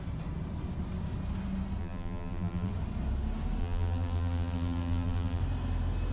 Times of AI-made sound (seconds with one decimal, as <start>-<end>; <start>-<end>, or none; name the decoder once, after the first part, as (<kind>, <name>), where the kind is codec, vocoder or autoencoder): 1.8-2.7 (vocoder, BigVGAN v2); 3.6-5.4